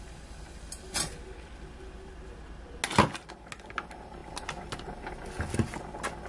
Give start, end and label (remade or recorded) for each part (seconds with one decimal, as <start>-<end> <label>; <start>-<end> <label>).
0.0-6.3 recorded